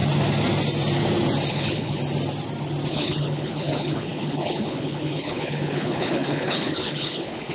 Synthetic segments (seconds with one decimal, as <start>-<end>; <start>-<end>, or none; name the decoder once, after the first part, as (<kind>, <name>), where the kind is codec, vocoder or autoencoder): 1.5-2.0 (codec, HILCodec); 2.9-7.5

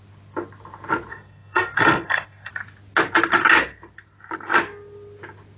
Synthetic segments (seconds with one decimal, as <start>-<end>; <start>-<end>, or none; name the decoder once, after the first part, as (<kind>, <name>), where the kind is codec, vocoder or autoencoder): 1.1-2.5 (codec, SNAC)

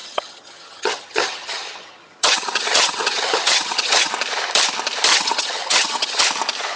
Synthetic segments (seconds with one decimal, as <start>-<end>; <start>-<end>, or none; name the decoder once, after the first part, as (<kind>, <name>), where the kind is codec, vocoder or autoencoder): 0.0-4.1 (vocoder, HiFi-GAN); 5.1-6.2

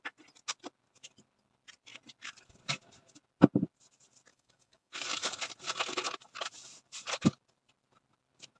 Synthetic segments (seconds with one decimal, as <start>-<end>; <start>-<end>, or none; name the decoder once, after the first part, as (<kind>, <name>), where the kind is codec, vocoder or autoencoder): 4.3-5.4 (codec, DAC)

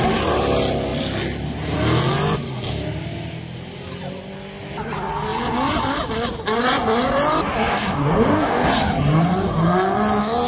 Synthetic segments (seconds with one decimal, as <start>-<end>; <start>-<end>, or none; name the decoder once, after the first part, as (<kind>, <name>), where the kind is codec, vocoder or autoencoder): 7.7-8.7 (codec, DAC)